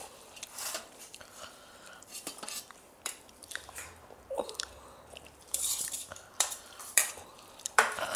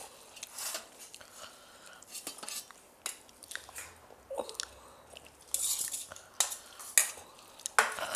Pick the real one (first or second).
second